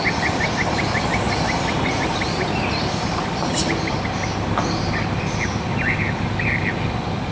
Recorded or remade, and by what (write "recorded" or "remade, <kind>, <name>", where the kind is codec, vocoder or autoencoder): recorded